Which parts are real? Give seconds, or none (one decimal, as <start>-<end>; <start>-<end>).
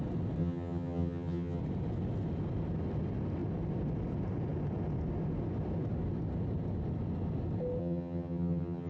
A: 0.0-0.4; 1.6-7.8